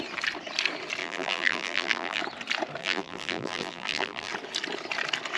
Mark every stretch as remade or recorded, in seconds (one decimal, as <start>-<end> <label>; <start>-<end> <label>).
0.0-1.0 recorded; 1.0-2.2 remade; 2.2-2.8 recorded; 2.8-4.3 remade; 4.3-5.4 recorded